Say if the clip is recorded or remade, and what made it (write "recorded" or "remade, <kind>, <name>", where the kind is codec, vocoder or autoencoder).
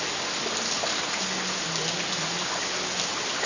recorded